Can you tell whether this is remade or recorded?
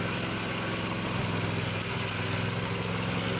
recorded